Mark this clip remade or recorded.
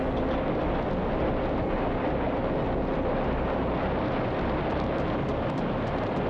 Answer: recorded